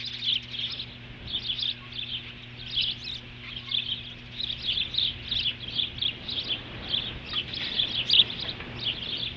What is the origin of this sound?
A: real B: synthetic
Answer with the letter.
A